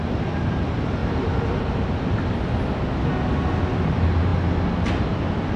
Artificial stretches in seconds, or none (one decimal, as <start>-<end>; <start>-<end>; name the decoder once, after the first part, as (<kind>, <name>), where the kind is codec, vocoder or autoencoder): 1.0-1.8 (vocoder, BigVGAN v2)